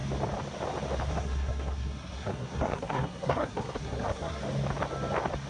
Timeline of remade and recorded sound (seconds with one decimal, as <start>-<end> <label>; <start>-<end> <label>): 0.0-1.1 recorded; 1.1-4.4 remade; 4.4-5.5 recorded